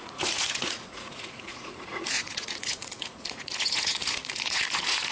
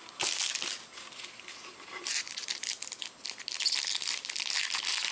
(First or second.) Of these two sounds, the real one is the second